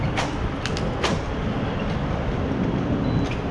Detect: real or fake real